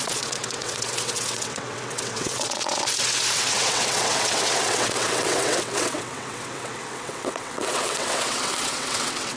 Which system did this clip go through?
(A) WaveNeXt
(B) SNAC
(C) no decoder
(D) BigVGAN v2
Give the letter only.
A